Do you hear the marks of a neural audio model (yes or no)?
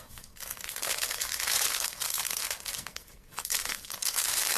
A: yes